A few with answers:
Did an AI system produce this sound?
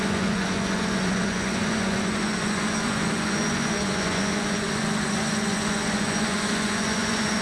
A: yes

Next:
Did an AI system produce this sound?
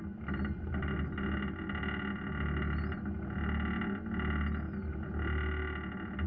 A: no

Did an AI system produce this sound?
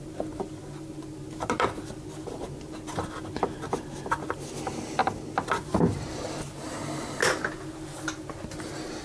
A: no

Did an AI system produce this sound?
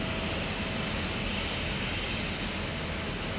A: no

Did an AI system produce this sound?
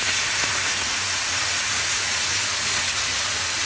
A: yes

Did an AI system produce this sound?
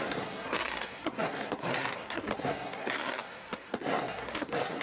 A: yes